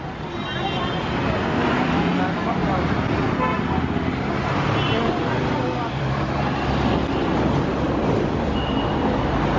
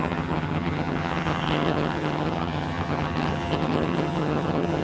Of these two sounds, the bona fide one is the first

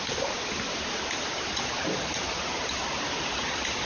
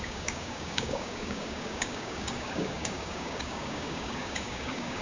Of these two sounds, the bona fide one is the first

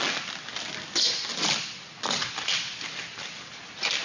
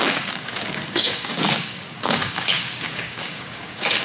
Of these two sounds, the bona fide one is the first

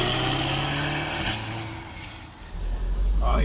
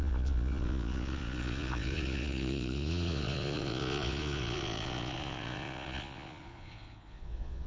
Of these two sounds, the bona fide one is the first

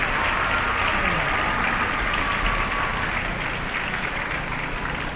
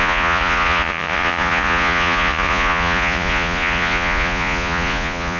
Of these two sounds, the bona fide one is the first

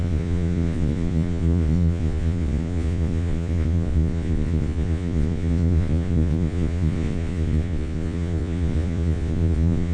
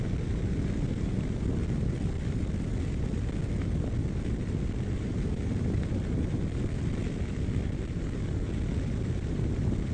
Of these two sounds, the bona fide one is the second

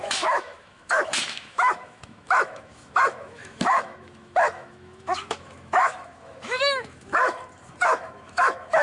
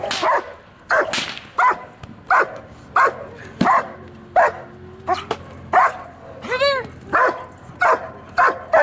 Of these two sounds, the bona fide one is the second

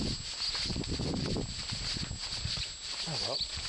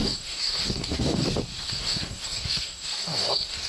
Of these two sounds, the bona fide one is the first